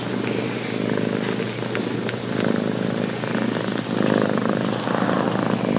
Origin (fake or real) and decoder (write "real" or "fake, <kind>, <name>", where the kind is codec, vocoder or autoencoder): real